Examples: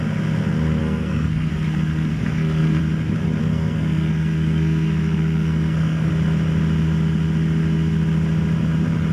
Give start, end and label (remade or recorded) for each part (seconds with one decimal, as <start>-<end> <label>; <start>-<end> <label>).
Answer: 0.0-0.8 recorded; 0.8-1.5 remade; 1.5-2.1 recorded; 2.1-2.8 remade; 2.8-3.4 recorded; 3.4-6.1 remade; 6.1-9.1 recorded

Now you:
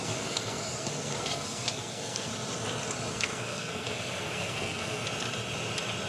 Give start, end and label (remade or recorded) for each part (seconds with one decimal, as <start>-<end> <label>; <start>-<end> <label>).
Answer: 0.0-2.3 remade; 2.3-3.1 recorded; 3.1-5.0 remade; 5.0-6.1 recorded

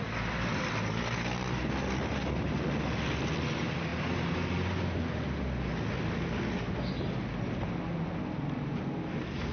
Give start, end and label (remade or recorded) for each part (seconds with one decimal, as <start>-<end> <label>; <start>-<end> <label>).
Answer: 0.0-9.5 recorded

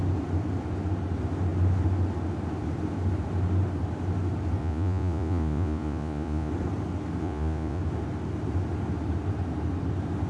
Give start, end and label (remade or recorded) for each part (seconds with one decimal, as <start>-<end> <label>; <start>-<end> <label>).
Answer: 0.0-4.6 recorded; 4.6-6.5 remade; 6.5-7.2 recorded; 7.2-7.8 remade; 7.8-10.3 recorded